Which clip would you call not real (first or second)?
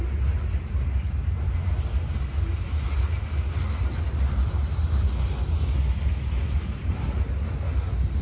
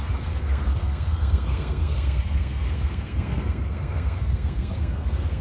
second